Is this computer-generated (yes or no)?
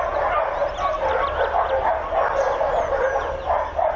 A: no